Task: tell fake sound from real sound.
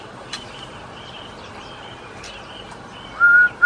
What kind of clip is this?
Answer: fake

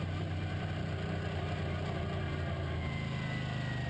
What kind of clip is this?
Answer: real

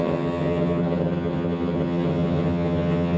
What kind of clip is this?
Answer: fake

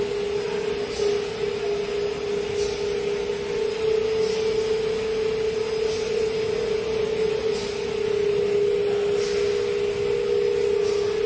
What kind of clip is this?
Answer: real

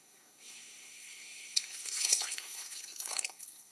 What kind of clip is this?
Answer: fake